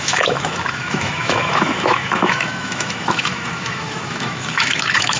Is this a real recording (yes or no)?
no